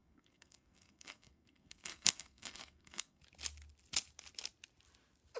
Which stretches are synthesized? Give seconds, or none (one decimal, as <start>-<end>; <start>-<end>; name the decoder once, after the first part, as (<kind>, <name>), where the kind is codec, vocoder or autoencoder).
0.0-3.2 (codec, SNAC)